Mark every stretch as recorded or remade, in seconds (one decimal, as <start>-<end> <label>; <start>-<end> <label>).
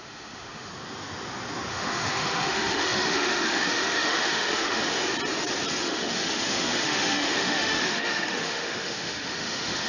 0.0-0.7 remade; 0.7-1.7 recorded; 1.7-4.8 remade; 4.8-5.8 recorded; 5.8-9.9 remade